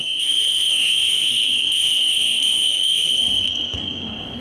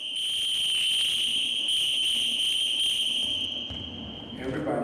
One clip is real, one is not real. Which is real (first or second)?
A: second